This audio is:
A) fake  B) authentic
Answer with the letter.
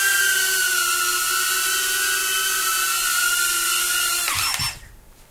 B